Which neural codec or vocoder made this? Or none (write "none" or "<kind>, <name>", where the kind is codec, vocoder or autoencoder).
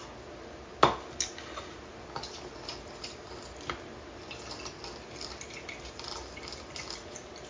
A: none